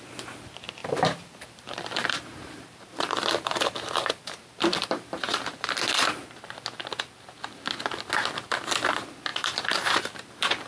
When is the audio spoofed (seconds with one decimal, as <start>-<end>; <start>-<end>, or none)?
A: 0.8-5.8; 9.3-10.7